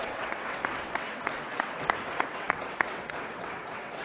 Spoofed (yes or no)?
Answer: yes